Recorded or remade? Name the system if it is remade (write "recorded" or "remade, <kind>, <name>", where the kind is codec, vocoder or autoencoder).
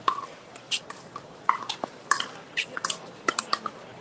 remade, vocoder, BigVGAN v2